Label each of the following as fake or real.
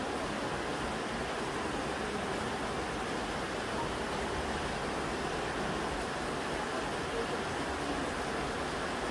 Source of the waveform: real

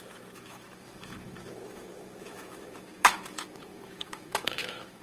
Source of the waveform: fake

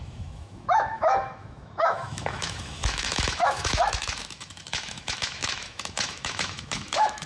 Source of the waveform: fake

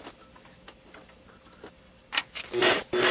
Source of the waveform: real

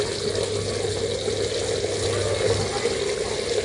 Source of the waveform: real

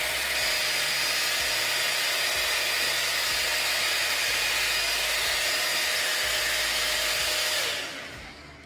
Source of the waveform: real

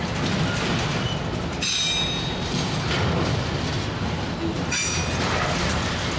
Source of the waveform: real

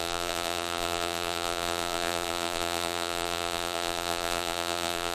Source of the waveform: fake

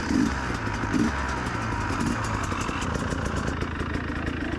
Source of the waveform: real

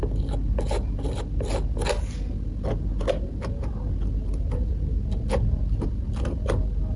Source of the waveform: real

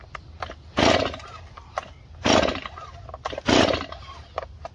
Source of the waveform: fake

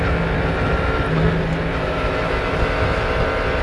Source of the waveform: real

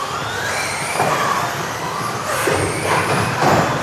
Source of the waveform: real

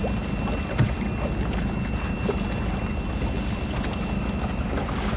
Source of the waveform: real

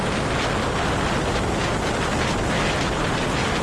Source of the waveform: real